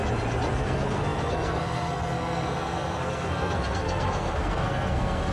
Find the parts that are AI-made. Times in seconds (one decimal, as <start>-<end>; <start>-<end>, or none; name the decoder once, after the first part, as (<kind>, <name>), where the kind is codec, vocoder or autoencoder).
0.5-5.3 (codec, SNAC)